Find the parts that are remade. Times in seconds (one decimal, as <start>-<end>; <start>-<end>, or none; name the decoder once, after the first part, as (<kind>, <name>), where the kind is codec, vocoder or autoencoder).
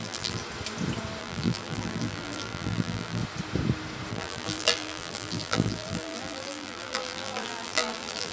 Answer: 0.0-0.4 (vocoder, BigVGAN v2); 1.2-3.2; 4.1-8.3